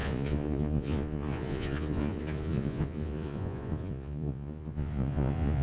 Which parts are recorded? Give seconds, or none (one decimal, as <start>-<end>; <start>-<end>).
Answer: none